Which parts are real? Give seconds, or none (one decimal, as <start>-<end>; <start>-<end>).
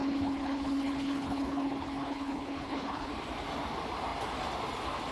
3.1-5.1